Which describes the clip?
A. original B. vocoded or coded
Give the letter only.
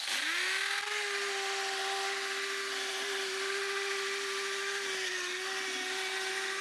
A